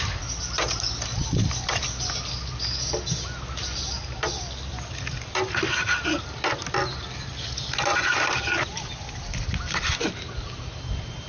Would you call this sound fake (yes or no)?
no